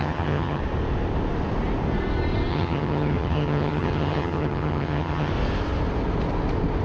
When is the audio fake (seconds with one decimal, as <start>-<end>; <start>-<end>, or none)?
0.0-0.6; 2.5-5.3